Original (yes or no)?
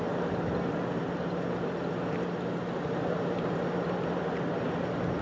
yes